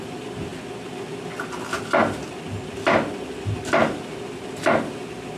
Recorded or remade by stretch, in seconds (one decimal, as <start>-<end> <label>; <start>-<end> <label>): 0.0-5.4 recorded